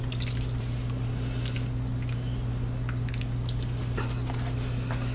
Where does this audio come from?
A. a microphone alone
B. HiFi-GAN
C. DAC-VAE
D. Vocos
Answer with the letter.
A